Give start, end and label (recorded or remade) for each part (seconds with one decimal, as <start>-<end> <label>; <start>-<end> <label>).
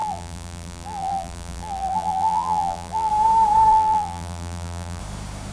0.0-3.1 remade; 3.1-3.7 recorded; 3.7-5.0 remade; 5.0-5.5 recorded